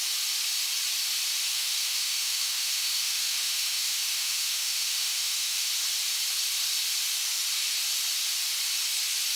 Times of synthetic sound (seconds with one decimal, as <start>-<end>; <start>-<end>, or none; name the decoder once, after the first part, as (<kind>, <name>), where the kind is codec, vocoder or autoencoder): 1.5-5.7 (autoencoder, DAC-VAE)